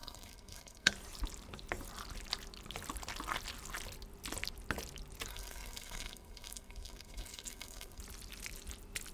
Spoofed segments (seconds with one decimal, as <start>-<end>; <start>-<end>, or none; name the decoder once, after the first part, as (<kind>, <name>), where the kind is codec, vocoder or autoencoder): 0.0-0.9 (codec, SNAC); 5.3-8.0